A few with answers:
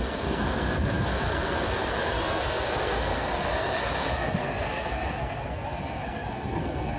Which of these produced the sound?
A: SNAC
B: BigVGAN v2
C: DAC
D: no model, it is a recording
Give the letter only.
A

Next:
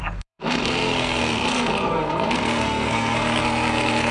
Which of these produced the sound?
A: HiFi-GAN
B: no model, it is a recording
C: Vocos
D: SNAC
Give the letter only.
D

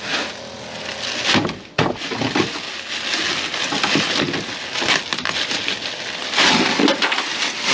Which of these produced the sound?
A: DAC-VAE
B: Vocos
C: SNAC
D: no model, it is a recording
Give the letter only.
D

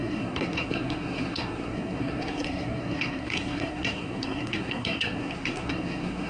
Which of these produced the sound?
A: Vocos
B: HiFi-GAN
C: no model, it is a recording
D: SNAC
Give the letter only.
D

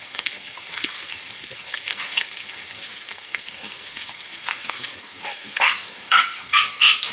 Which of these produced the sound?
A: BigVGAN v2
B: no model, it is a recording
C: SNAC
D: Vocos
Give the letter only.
C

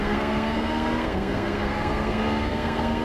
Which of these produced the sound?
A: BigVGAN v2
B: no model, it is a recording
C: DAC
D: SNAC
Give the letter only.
D